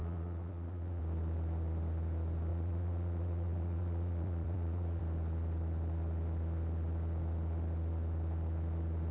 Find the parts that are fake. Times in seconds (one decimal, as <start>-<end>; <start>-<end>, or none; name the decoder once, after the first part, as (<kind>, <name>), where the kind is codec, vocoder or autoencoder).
0.0-1.0 (vocoder, Vocos); 2.5-5.0